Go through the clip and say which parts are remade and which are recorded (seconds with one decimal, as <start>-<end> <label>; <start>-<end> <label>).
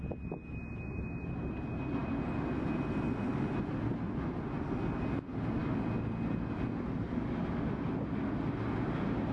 0.0-9.3 recorded